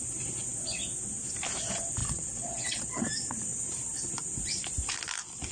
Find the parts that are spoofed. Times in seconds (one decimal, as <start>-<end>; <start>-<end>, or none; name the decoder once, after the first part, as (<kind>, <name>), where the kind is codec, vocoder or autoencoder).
2.0-3.0 (vocoder, WaveNeXt)